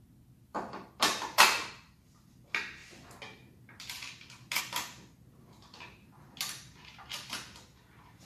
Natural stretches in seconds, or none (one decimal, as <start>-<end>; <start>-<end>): 0.0-0.5; 1.7-8.3